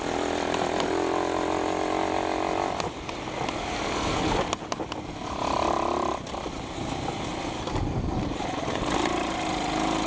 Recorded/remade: recorded